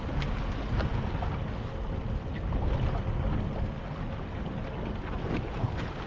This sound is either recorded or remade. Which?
recorded